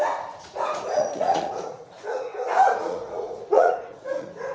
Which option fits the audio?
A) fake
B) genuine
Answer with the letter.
A